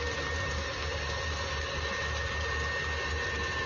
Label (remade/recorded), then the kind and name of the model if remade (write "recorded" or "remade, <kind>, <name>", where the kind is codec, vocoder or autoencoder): recorded